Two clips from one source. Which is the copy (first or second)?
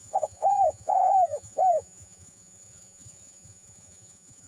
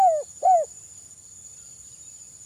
first